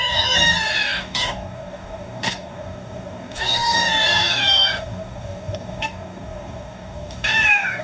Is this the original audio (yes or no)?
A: no